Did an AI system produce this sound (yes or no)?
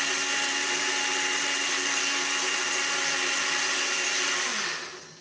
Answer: no